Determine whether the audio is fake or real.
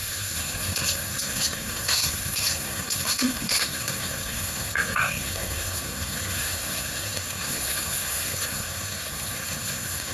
fake